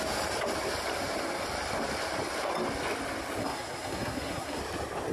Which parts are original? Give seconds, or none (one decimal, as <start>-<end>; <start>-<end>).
0.0-3.4; 4.6-5.1